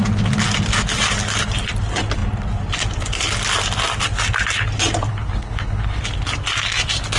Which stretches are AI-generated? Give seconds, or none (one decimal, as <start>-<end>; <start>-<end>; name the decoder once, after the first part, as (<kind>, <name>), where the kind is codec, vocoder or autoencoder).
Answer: 5.1-6.0 (codec, HILCodec)